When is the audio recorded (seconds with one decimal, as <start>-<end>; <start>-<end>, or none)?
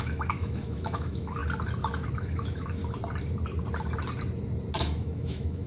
1.4-2.2; 2.8-4.8